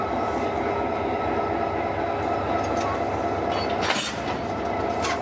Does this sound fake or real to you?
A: real